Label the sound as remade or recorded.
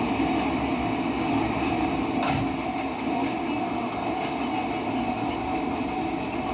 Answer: recorded